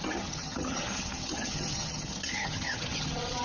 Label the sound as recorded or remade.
remade